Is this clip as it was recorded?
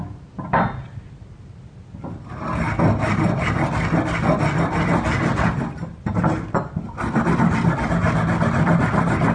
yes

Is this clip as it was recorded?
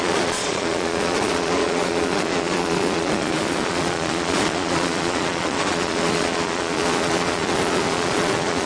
no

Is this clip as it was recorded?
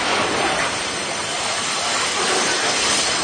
yes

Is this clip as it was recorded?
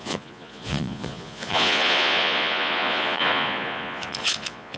no